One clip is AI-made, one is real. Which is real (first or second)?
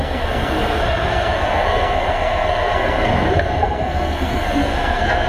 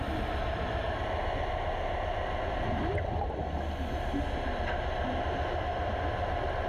second